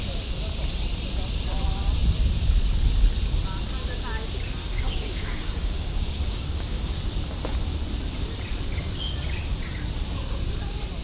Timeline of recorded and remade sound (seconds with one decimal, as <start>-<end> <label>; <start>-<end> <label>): 0.0-4.6 recorded; 4.6-6.9 remade; 6.9-11.0 recorded